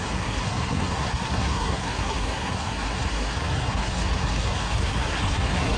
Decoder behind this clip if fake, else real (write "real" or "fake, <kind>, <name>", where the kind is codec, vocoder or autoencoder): fake, codec, SNAC